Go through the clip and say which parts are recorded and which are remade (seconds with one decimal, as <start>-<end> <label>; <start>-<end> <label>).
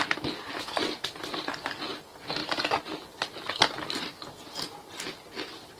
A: 0.0-2.4 recorded; 2.4-4.1 remade; 4.1-5.8 recorded